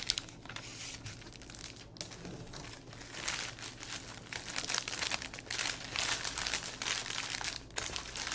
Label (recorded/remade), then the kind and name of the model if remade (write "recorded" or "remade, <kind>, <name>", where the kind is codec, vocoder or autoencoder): recorded